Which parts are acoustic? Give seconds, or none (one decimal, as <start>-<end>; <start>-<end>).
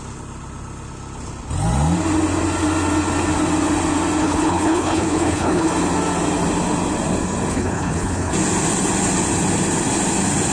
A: 0.0-4.2; 5.7-7.5; 8.3-10.5